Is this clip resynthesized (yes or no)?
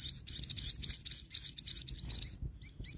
no